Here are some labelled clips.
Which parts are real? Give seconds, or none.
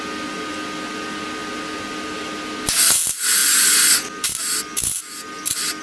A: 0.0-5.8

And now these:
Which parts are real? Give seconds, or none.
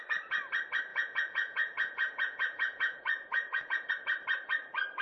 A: 0.0-0.9; 3.9-5.0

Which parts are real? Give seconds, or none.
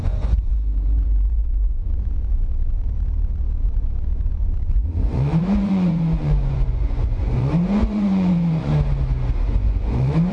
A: 8.7-9.5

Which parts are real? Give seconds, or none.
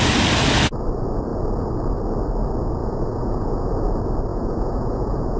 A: 0.0-2.8; 3.7-4.3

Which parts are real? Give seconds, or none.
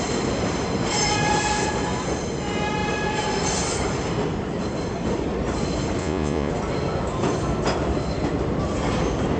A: 0.0-6.0; 6.5-9.4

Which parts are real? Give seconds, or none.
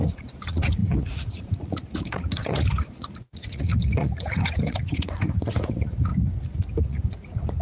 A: 6.1-6.8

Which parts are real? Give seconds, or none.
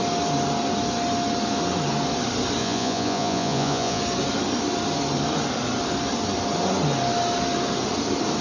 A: 0.0-2.6; 4.0-8.4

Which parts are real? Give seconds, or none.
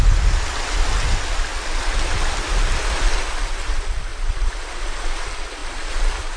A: 0.0-6.4